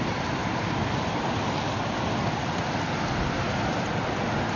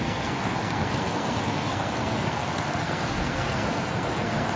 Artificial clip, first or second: second